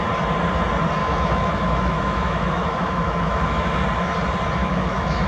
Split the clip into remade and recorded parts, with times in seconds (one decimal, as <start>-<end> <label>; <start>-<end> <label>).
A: 0.0-1.0 recorded; 1.0-3.8 remade; 3.8-4.6 recorded; 4.6-5.3 remade